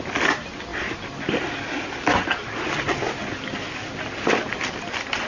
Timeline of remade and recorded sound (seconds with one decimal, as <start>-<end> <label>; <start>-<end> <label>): 0.0-5.3 recorded

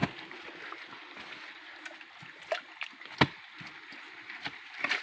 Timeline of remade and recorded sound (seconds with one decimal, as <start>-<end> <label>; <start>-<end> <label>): 0.0-5.0 recorded